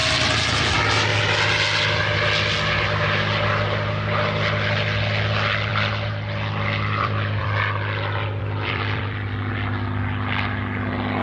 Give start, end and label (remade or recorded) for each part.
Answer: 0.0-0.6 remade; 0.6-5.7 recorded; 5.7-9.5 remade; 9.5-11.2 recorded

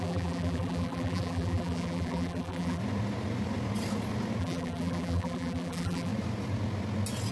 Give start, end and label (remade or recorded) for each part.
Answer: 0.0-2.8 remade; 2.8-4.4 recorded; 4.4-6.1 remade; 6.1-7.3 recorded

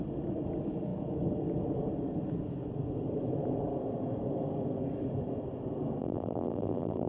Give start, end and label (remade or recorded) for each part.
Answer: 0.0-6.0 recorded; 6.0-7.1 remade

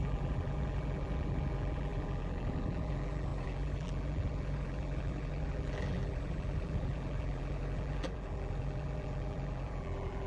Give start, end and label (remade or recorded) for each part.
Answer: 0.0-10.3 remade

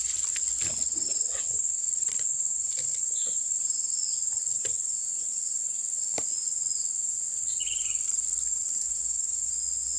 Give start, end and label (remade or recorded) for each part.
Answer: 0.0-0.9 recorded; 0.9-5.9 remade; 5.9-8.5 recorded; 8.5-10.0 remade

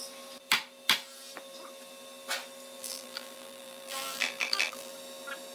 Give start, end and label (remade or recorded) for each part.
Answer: 0.0-2.8 recorded; 2.8-4.9 remade; 4.9-5.5 recorded

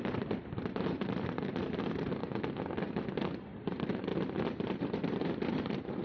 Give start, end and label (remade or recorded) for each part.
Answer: 0.0-2.2 remade; 2.2-3.6 recorded; 3.6-4.1 remade; 4.1-4.8 recorded; 4.8-6.0 remade

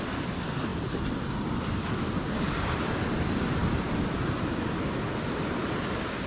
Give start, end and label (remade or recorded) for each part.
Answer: 0.0-6.3 remade